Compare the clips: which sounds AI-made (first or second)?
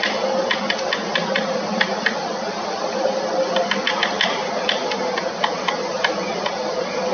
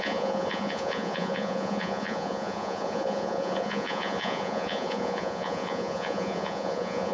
second